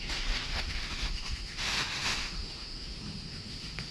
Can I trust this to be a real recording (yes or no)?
no